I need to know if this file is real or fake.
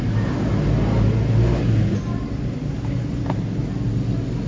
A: real